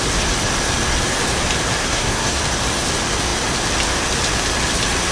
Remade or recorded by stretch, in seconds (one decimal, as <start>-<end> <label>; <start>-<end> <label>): 0.0-1.8 recorded; 1.8-2.4 remade; 2.4-5.1 recorded